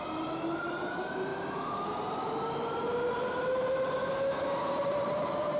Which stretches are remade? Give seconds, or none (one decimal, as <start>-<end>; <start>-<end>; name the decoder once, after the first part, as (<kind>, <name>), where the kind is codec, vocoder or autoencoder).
0.0-1.3 (vocoder, BigVGAN v2); 4.7-5.6